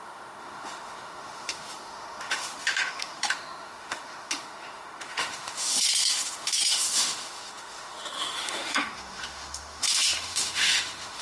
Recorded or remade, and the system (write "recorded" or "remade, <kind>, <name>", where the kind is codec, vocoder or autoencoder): remade, autoencoder, DAC-VAE